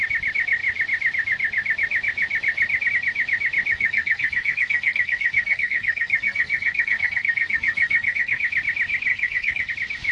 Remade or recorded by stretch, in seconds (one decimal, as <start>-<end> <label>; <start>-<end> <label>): 0.0-3.7 recorded; 3.7-8.4 remade; 8.4-9.1 recorded; 9.1-9.7 remade; 9.7-10.1 recorded